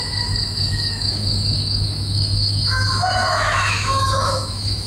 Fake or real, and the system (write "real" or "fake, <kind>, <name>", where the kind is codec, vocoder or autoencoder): fake, autoencoder, DAC-VAE